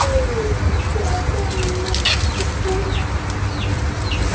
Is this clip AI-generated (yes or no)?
no